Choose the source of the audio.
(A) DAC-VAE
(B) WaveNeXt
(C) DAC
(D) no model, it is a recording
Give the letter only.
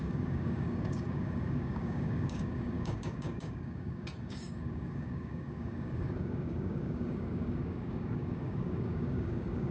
C